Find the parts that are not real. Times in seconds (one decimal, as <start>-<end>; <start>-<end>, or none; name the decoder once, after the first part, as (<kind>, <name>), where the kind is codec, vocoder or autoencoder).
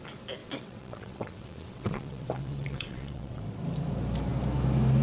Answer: 0.4-3.4 (vocoder, WaveNeXt)